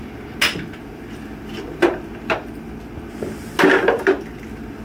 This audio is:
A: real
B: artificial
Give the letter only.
A